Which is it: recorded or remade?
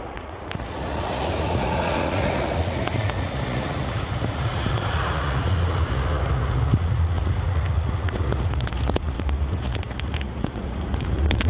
remade